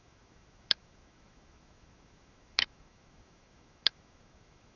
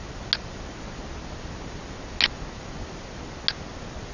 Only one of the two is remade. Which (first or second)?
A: first